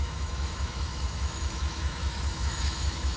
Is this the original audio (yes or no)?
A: no